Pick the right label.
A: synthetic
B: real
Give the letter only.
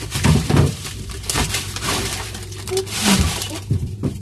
A